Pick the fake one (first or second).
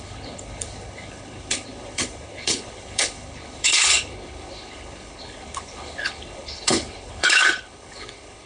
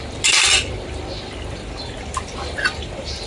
first